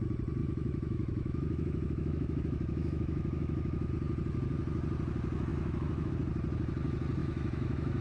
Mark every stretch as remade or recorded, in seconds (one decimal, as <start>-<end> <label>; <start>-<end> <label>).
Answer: 0.0-0.4 recorded; 0.4-3.9 remade; 3.9-5.5 recorded; 5.5-6.1 remade; 6.1-7.2 recorded; 7.2-8.0 remade